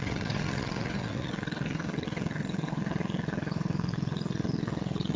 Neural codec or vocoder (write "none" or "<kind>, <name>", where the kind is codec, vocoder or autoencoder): vocoder, WaveNeXt